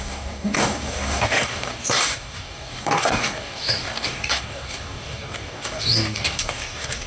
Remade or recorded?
remade